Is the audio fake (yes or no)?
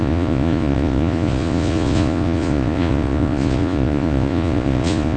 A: yes